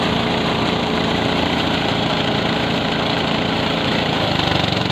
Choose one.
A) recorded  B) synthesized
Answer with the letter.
B